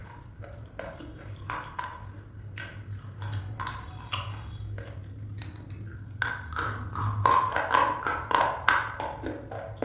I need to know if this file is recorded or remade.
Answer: recorded